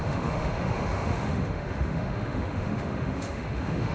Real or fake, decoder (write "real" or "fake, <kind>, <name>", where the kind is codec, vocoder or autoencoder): fake, autoencoder, DAC-VAE